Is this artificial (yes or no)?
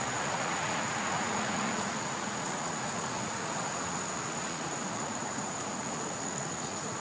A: yes